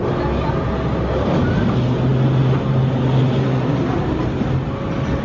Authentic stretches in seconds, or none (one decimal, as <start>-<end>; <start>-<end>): 0.0-5.2